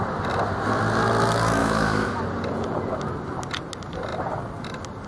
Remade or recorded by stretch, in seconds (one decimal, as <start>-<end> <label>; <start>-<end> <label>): 0.0-1.6 recorded; 1.6-2.2 remade; 2.2-5.1 recorded

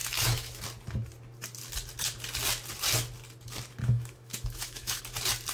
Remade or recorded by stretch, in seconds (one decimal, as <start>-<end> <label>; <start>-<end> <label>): 0.0-0.6 remade; 0.6-3.8 recorded; 3.8-5.0 remade; 5.0-5.5 recorded

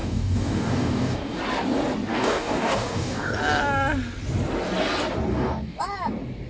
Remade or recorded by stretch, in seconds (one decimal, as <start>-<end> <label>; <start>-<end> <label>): 0.0-1.4 remade; 1.4-2.1 recorded; 2.1-3.4 remade; 3.4-5.3 recorded; 5.3-5.8 remade; 5.8-6.5 recorded

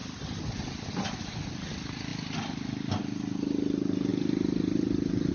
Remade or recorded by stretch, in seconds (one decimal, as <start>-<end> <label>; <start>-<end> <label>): 0.0-5.3 recorded

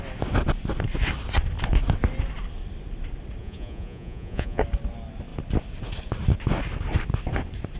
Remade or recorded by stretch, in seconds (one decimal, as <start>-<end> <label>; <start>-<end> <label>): 0.0-3.4 recorded; 3.4-4.6 remade; 4.6-7.8 recorded

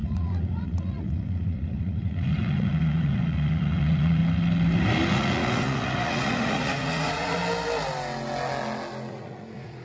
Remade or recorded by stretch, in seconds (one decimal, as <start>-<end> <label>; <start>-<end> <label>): 0.0-4.2 remade; 4.2-5.1 recorded; 5.1-7.4 remade; 7.4-9.1 recorded; 9.1-9.8 remade

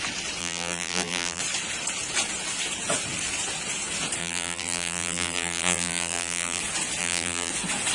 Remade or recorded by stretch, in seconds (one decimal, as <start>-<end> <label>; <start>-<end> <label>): 0.0-0.4 recorded; 0.4-1.4 remade; 1.4-4.2 recorded; 4.2-6.6 remade; 6.6-7.0 recorded; 7.0-7.5 remade; 7.5-7.9 recorded

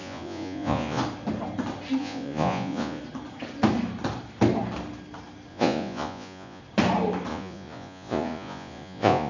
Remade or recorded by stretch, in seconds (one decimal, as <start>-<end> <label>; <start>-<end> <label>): 0.0-1.0 remade; 1.0-2.0 recorded; 2.0-3.0 remade; 3.0-5.5 recorded; 5.5-6.6 remade; 6.6-7.3 recorded; 7.3-9.3 remade